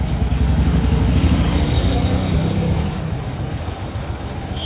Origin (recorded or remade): remade